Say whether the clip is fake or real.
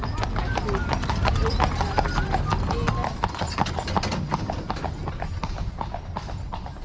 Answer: real